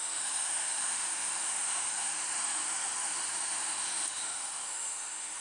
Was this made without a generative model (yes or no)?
no